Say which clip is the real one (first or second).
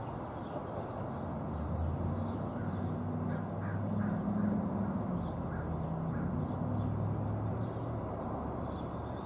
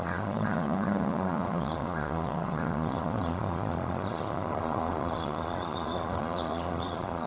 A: first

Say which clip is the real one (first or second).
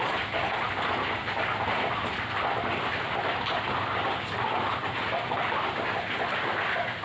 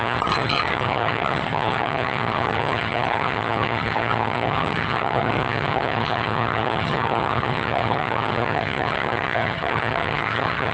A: first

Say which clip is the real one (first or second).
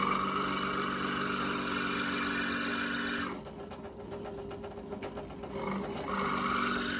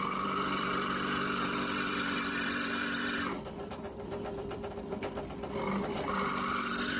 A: first